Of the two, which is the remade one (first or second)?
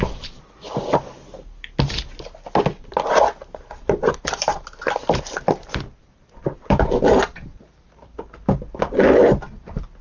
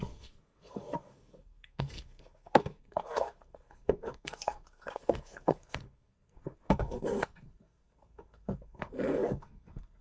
second